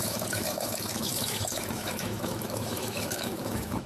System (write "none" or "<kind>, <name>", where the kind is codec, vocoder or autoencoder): autoencoder, DAC-VAE